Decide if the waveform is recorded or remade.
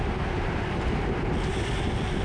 recorded